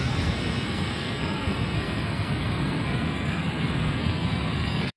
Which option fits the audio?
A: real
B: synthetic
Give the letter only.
B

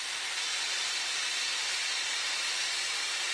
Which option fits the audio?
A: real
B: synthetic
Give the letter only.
A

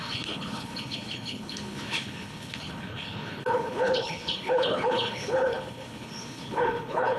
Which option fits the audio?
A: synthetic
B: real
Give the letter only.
A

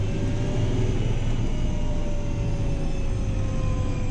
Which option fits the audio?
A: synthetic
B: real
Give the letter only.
B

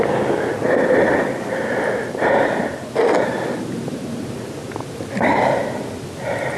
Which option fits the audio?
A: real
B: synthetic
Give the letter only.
A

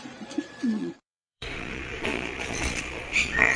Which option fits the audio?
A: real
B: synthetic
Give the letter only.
B